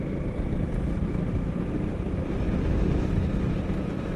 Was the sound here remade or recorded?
recorded